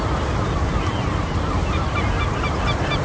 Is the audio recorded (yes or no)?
yes